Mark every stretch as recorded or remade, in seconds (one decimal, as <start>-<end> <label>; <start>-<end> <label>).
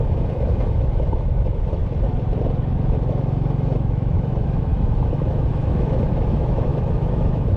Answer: 0.0-1.8 remade; 1.8-2.7 recorded; 2.7-7.6 remade